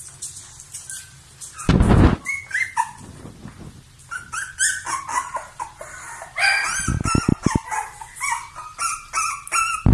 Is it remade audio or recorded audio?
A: recorded